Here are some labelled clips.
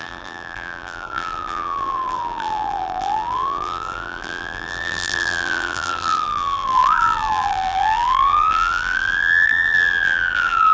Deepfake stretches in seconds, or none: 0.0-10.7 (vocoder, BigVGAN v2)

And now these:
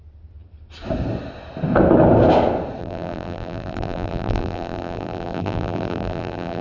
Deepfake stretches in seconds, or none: 2.8-6.6 (vocoder, BigVGAN v2)

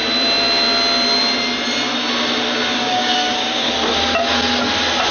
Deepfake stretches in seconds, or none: 2.7-3.7 (codec, DAC)